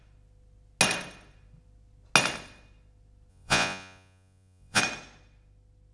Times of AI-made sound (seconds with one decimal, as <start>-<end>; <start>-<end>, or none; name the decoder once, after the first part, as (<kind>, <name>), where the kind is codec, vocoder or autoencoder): 3.3-4.8 (vocoder, Vocos)